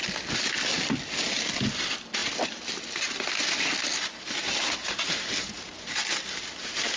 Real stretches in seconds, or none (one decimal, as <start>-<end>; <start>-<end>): 0.0-7.0